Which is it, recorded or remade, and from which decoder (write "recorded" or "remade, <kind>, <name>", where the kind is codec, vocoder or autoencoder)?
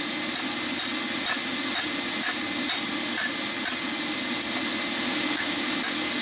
recorded